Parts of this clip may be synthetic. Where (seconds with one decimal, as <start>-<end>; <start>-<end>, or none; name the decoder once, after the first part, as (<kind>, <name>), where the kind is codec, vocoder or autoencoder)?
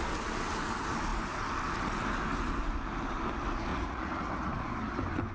3.7-4.5 (vocoder, Vocos)